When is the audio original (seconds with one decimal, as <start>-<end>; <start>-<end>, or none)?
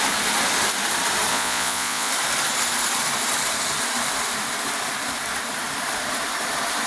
0.0-1.3; 2.1-6.9